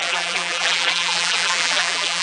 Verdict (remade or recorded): remade